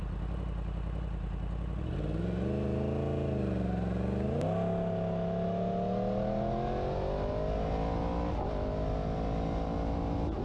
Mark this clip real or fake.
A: real